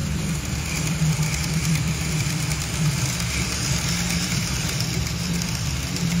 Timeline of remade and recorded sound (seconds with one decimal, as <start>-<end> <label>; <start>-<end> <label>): 0.0-6.2 remade